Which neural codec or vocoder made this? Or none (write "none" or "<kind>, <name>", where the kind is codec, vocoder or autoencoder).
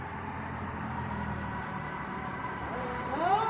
vocoder, BigVGAN v2